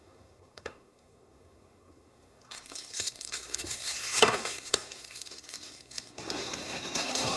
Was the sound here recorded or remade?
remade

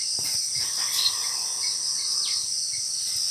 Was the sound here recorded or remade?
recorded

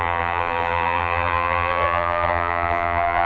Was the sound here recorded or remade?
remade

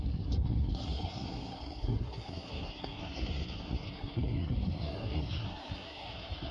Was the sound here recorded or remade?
remade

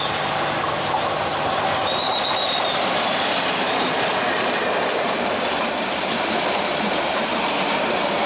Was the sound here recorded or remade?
recorded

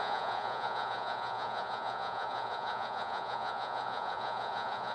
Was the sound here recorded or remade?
remade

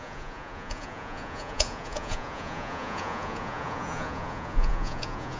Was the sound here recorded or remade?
remade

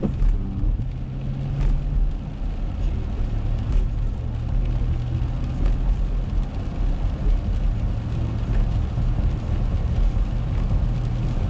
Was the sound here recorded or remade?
recorded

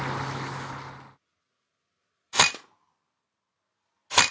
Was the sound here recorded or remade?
recorded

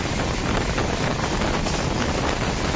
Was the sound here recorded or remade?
recorded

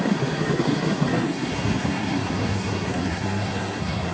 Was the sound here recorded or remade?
remade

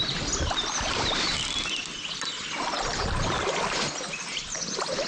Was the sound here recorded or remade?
recorded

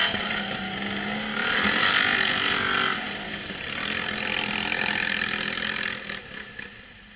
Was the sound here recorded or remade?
recorded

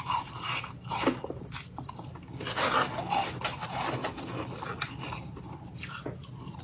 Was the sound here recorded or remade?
recorded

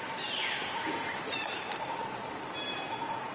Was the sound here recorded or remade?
recorded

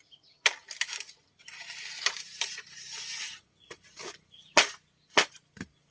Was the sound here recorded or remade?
recorded